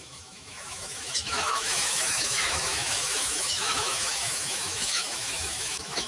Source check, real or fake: fake